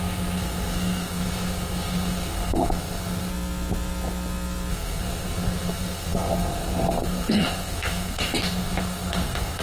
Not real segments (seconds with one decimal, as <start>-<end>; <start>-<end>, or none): 0.0-3.3; 4.7-9.6